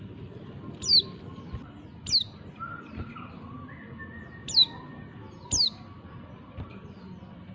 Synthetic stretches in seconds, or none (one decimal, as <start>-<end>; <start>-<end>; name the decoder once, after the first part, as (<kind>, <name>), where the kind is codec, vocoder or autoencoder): none

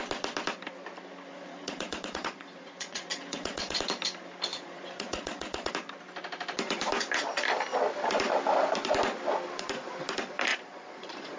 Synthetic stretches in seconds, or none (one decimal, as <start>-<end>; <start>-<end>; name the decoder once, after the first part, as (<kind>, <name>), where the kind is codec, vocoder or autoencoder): 1.3-3.8 (vocoder, Vocos); 4.5-5.7; 10.5-11.4